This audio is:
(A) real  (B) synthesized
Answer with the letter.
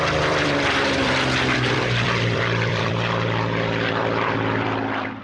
B